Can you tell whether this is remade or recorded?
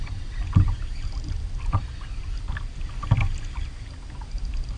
recorded